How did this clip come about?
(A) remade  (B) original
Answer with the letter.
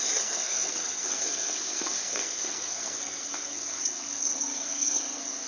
A